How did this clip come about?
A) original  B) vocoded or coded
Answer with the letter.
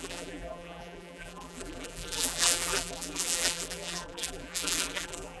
B